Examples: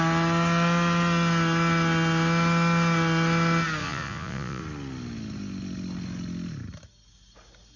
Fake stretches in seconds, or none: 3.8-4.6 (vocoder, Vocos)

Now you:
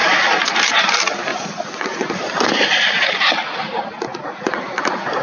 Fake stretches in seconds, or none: 1.3-2.1 (vocoder, Vocos); 4.1-4.8

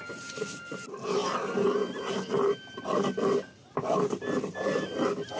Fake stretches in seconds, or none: none

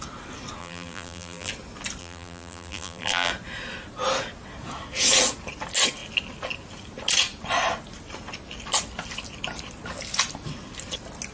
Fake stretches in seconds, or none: 0.6-1.5 (vocoder, BigVGAN v2); 2.0-3.3

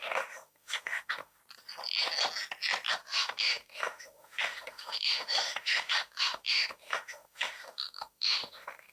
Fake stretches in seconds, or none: 0.0-1.4 (autoencoder, DAC-VAE); 2.9-8.9

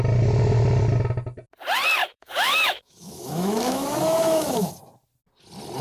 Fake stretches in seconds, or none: 2.0-4.7 (autoencoder, DAC-VAE)

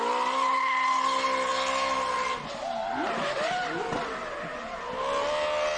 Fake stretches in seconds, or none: none

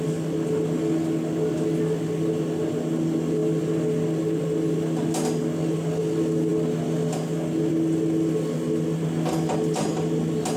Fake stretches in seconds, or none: none